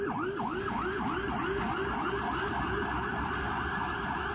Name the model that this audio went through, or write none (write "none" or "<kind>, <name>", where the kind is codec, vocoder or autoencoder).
none